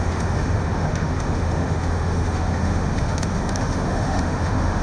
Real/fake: fake